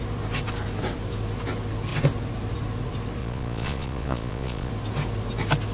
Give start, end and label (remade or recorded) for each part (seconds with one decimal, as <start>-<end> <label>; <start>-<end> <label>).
0.0-3.2 recorded; 3.2-4.7 remade; 4.7-5.7 recorded